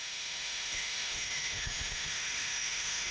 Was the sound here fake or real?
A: fake